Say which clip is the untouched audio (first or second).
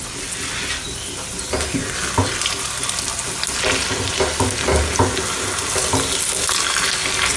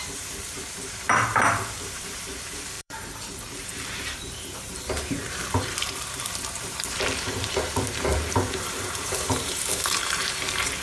first